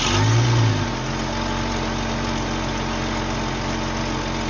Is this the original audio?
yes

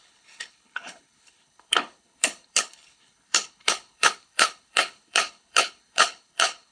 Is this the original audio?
no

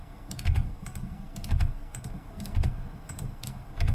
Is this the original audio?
no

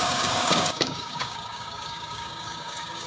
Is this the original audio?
no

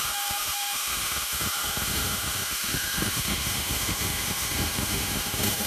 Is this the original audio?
no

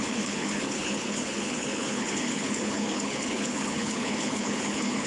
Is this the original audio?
no